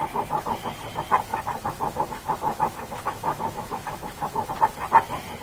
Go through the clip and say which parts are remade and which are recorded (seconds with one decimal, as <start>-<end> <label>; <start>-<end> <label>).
0.0-1.3 recorded; 1.3-4.5 remade; 4.5-5.4 recorded